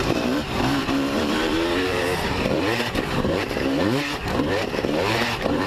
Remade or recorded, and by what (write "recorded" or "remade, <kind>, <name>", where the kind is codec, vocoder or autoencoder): remade, vocoder, BigVGAN v2